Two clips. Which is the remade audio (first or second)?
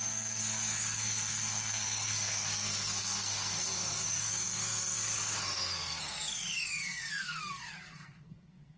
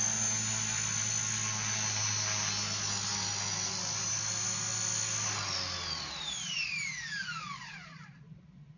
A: first